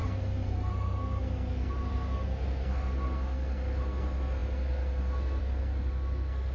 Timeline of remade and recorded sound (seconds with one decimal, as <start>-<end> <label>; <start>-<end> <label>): 0.0-6.5 remade